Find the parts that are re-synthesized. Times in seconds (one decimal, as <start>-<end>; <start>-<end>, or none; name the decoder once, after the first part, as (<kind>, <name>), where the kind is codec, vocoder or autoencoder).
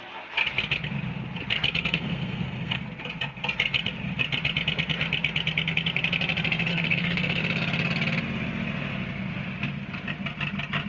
1.8-2.8 (codec, SNAC); 6.7-7.4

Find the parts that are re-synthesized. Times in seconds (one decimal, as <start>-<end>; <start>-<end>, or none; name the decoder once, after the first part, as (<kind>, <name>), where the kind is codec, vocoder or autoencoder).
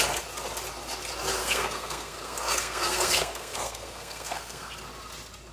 1.4-4.7 (codec, SNAC)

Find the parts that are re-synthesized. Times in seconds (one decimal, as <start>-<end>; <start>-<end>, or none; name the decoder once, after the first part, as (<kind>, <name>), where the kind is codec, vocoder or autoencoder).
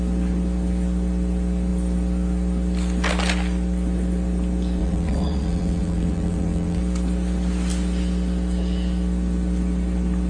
4.8-6.8 (vocoder, WaveNeXt)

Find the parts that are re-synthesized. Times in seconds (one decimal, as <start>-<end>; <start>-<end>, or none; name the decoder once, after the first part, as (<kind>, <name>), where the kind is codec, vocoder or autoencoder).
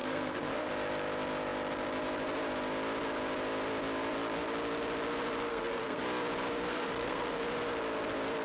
0.0-0.7 (codec, SNAC); 5.5-6.0; 6.7-7.4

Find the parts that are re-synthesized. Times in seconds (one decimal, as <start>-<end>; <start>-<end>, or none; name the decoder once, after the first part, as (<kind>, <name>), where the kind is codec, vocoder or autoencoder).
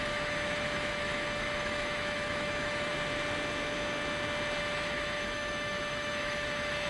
0.0-2.9 (autoencoder, DAC-VAE); 4.6-6.9